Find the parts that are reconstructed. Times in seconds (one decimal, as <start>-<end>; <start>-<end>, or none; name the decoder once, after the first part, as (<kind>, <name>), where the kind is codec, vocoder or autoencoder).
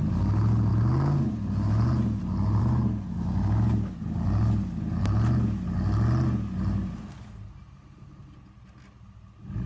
none